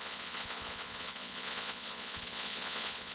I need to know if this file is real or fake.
fake